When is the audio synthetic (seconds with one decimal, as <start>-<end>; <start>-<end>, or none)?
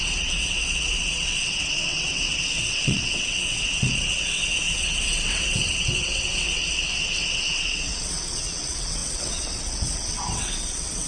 0.0-11.1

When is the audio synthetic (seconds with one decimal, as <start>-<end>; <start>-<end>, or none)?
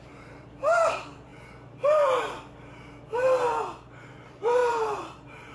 0.0-1.3; 4.1-5.5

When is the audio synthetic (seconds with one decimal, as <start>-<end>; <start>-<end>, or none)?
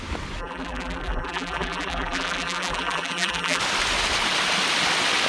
0.4-3.6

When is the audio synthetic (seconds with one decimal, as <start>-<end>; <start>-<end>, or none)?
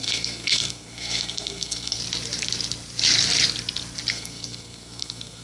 0.0-2.0; 4.1-5.4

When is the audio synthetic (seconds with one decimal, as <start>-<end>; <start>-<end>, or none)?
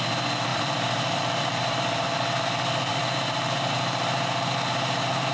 0.5-3.7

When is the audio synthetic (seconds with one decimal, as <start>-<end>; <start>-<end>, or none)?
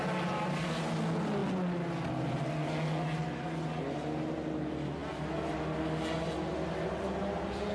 none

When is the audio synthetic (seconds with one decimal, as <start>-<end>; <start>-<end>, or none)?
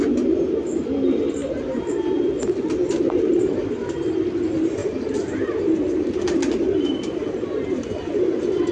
4.8-8.7